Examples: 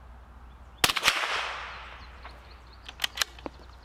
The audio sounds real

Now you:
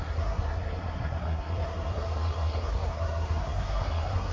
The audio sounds fake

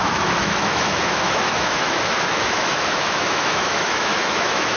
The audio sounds fake